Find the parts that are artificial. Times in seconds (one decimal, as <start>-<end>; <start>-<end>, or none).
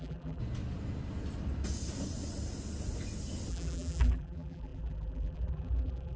0.0-0.4; 3.5-6.2